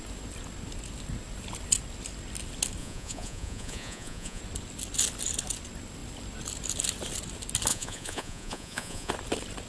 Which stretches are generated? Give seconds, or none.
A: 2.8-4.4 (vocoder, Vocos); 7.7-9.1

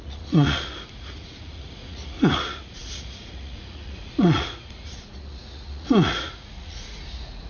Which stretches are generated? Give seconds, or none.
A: 0.0-7.5 (vocoder, Vocos)